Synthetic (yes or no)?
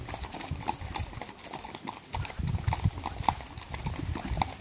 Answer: no